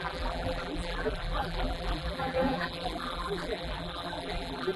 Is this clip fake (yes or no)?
yes